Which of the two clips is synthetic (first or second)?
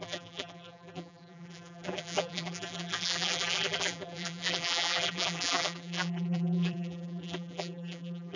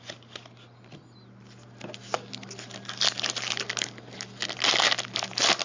first